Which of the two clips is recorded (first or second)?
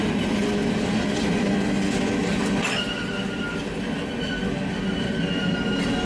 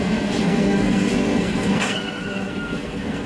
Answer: first